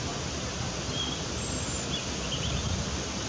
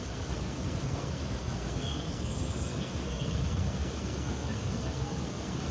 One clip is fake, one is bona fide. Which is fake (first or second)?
second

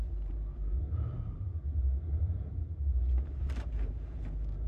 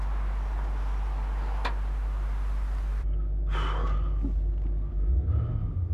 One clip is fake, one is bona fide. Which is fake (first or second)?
first